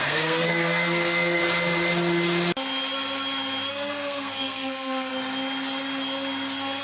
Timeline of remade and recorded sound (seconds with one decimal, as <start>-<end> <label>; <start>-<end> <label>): 0.0-1.4 remade; 1.4-3.7 recorded; 3.7-5.1 remade; 5.1-6.8 recorded